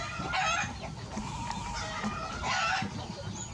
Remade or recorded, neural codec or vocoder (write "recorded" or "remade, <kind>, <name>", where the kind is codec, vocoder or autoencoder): recorded